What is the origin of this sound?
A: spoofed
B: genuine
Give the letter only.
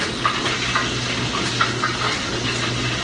B